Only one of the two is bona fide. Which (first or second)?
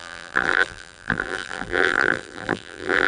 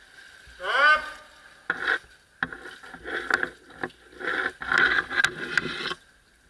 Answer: second